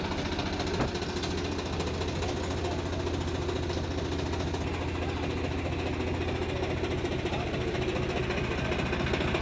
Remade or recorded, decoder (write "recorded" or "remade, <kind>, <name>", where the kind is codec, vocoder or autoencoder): recorded